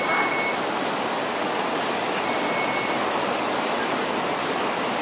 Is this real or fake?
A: real